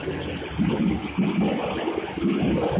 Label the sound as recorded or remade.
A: recorded